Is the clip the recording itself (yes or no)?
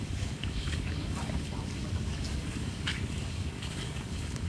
no